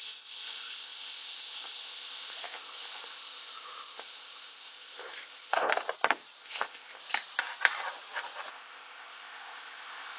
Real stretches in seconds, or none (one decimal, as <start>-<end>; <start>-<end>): 5.7-6.4; 7.0-8.5

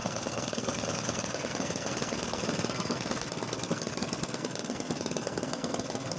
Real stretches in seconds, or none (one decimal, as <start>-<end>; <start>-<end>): none

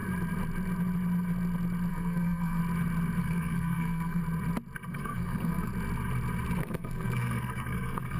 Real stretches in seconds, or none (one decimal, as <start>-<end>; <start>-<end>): 0.0-1.9; 2.6-3.2; 4.2-4.9; 5.7-6.6